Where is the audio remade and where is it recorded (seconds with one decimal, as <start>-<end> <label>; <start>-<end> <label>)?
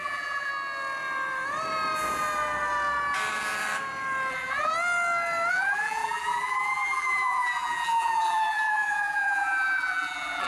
0.0-0.5 remade; 0.5-4.3 recorded; 4.3-4.7 remade; 4.7-5.5 recorded; 5.5-10.5 remade